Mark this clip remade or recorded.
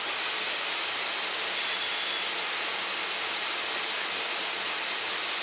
recorded